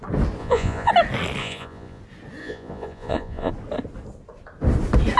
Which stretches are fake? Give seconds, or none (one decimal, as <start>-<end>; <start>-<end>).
0.4-0.9; 1.4-2.0; 2.4-3.5